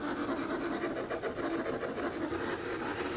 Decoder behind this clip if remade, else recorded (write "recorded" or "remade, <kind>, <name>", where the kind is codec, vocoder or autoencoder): recorded